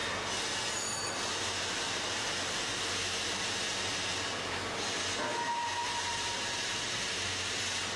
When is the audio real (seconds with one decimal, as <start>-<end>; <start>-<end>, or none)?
0.0-5.8; 6.4-8.0

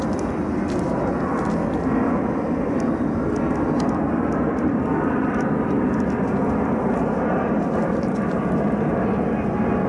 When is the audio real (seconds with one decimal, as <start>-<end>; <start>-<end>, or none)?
0.0-9.9